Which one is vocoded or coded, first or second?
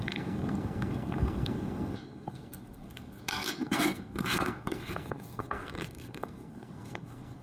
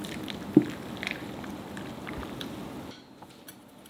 first